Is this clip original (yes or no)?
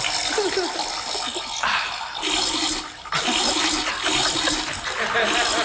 yes